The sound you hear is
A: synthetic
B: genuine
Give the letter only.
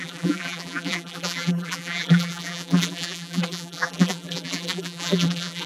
A